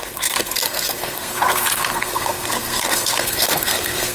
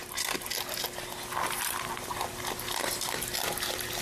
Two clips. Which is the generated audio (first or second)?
first